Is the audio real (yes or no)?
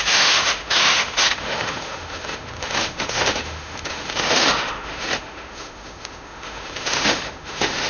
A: no